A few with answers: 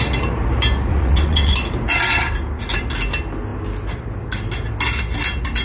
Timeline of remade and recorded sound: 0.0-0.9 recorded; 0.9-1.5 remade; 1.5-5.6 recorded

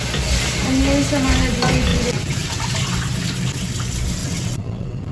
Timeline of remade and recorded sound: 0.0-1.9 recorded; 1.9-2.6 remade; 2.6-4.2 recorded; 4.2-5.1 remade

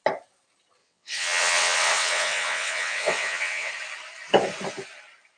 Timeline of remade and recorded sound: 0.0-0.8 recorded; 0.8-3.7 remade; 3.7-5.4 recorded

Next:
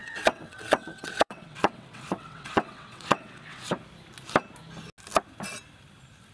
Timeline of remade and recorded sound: 0.0-3.8 remade; 3.8-6.3 recorded

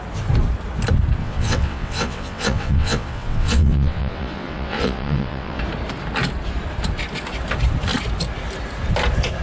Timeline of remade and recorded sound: 0.0-1.2 recorded; 1.2-5.6 remade; 5.6-9.4 recorded

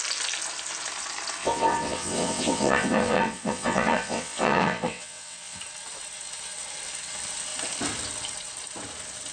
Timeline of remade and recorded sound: 0.0-1.4 recorded; 1.4-5.6 remade; 5.6-9.3 recorded

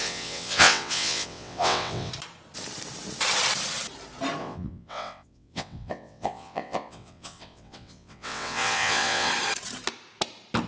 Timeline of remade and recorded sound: 0.0-2.1 remade; 2.1-4.4 recorded; 4.4-9.3 remade; 9.3-10.7 recorded

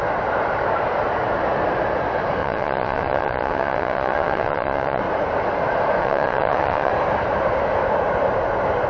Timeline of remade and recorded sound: 0.0-2.4 recorded; 2.4-5.0 remade; 5.0-6.0 recorded; 6.0-6.9 remade; 6.9-8.9 recorded